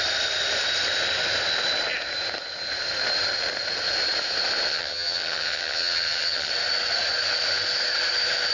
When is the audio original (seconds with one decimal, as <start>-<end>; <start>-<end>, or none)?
0.0-4.7; 6.5-8.5